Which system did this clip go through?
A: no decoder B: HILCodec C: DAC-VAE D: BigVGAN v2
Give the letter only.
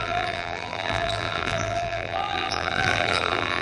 D